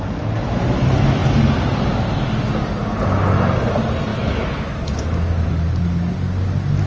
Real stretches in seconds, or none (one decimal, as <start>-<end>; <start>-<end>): 0.0-4.1; 5.5-6.9